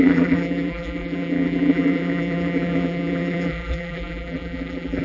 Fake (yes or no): yes